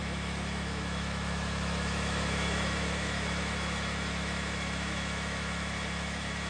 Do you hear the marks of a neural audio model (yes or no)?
yes